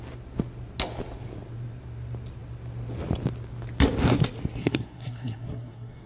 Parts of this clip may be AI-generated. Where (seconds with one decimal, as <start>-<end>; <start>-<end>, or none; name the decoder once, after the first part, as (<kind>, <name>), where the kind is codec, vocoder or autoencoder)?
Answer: 4.6-6.1 (codec, SNAC)